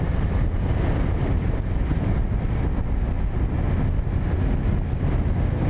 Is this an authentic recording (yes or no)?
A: yes